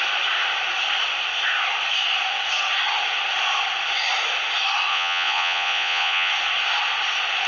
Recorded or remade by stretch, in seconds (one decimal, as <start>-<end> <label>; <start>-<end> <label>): 0.0-4.9 recorded; 4.9-6.3 remade; 6.3-7.5 recorded